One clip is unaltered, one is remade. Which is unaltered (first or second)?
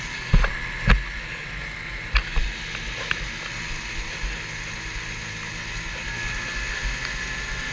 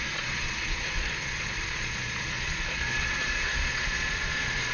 first